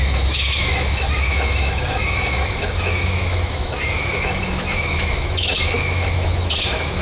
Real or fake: fake